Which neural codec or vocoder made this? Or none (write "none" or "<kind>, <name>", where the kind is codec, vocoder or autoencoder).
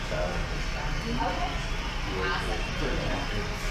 none